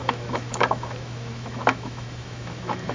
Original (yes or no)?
no